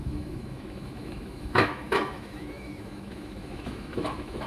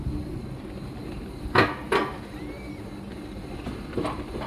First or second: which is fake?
first